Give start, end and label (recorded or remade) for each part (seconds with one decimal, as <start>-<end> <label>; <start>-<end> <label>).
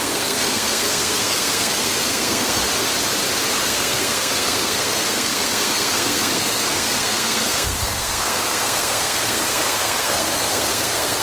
0.0-2.6 remade; 2.6-3.6 recorded; 3.6-11.2 remade